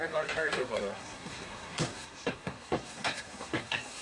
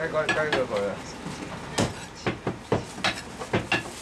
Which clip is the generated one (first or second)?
first